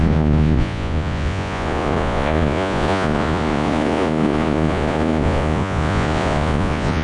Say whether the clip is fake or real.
fake